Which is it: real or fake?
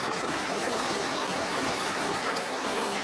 fake